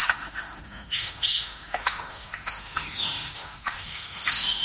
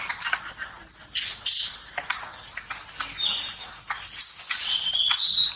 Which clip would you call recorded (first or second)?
second